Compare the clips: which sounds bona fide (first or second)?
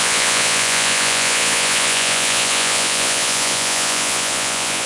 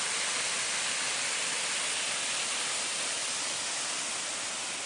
second